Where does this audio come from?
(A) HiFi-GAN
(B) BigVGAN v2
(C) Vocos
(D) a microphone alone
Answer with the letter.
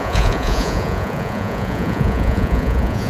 C